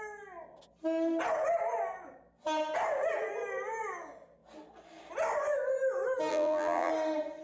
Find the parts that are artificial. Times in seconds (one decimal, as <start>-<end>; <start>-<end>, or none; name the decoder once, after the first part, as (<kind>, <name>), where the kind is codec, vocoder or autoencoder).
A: 6.3-6.9 (vocoder, BigVGAN v2)